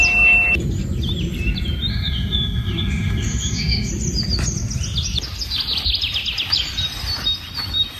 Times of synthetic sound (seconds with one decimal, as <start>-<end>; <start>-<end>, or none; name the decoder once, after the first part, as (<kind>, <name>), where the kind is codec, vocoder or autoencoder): 1.9-3.9 (autoencoder, DAC-VAE)